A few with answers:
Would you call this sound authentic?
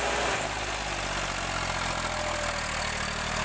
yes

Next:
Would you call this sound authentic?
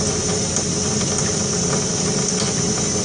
yes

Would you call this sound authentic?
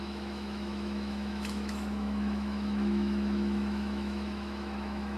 no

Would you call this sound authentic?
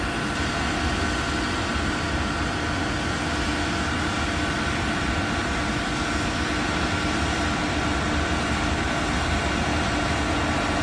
yes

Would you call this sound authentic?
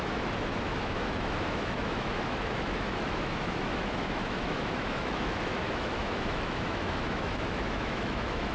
no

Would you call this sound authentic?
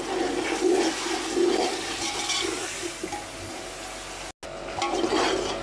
yes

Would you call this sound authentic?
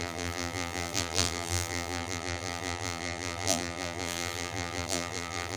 no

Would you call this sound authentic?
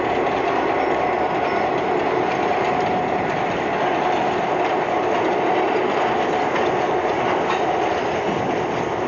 yes